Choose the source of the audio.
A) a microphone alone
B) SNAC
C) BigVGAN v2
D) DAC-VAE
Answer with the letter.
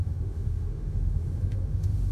D